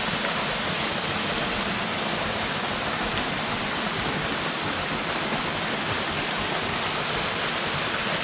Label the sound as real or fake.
real